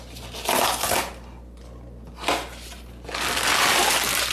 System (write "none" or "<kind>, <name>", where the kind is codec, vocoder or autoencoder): none